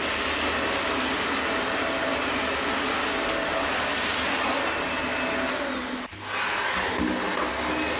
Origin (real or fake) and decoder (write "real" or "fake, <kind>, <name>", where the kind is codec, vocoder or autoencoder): real